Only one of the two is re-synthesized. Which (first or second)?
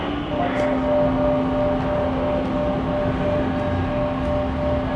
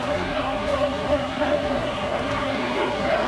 second